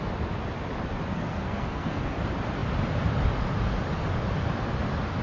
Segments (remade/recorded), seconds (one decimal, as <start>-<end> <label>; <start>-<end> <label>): 0.0-1.1 recorded; 1.1-2.1 remade; 2.1-5.2 recorded